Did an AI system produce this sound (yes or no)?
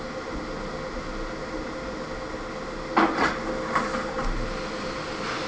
no